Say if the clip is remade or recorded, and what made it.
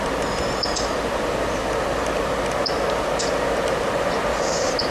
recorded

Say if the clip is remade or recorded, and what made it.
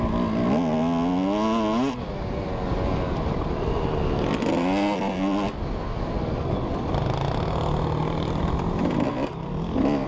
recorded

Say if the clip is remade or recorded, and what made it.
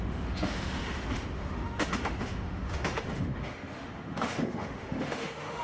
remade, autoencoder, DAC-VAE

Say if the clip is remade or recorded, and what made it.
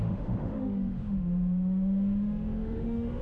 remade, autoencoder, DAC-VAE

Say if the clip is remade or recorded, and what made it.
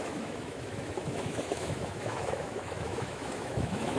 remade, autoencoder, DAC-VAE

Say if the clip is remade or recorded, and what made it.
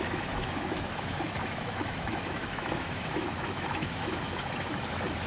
remade, autoencoder, DAC-VAE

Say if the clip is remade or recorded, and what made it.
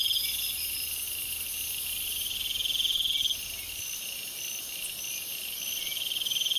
recorded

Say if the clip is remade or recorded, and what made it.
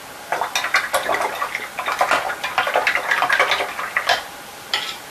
recorded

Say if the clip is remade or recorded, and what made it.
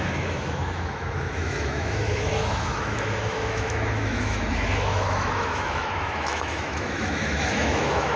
remade, autoencoder, DAC-VAE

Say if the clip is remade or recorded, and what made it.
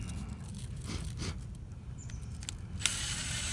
recorded